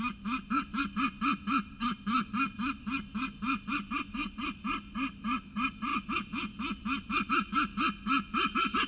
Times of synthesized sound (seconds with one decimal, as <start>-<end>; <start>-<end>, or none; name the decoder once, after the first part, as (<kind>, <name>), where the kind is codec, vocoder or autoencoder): none